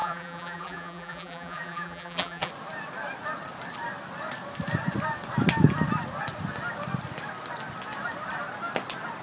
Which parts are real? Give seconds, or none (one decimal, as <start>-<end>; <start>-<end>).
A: 2.5-9.2